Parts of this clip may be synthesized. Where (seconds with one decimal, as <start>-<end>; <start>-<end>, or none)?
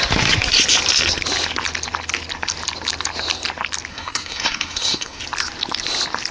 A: 3.9-5.2